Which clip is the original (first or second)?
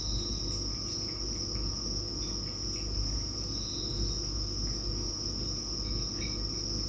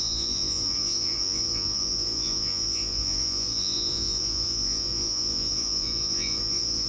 first